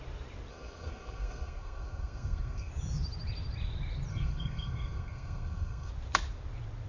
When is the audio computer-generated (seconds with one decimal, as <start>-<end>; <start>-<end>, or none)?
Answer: 0.5-2.7; 4.1-5.9